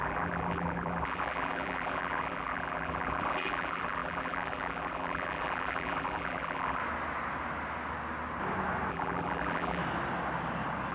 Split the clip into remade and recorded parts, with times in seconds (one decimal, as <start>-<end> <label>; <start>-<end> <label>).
0.0-6.8 remade; 6.8-8.9 recorded; 8.9-9.8 remade; 9.8-10.9 recorded